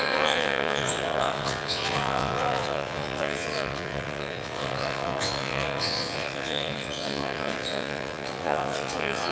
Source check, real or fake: fake